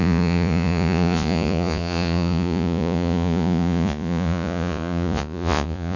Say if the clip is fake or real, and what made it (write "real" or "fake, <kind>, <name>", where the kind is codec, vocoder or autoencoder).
fake, vocoder, Vocos